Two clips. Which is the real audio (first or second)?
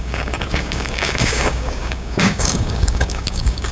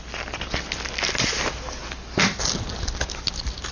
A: second